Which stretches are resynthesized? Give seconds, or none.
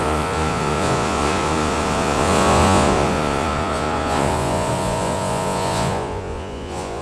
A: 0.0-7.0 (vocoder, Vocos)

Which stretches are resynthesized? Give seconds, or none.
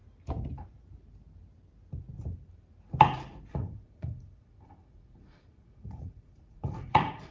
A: 3.5-7.3 (vocoder, Vocos)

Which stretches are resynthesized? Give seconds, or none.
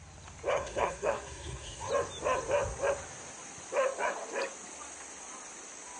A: 0.5-1.9 (codec, SNAC)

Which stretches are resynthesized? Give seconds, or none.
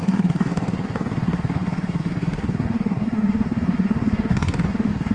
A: 0.0-5.1 (codec, SNAC)